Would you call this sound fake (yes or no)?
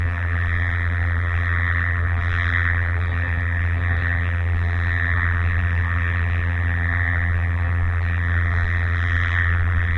yes